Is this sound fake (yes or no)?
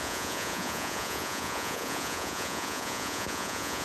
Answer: yes